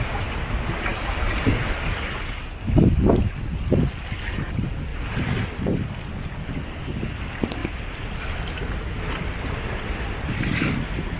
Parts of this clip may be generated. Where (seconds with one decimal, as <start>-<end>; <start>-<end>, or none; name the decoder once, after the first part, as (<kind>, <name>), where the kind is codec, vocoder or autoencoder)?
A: 4.9-5.8 (vocoder, BigVGAN v2)